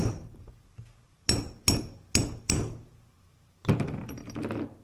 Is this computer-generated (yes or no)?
no